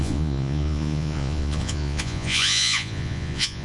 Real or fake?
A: fake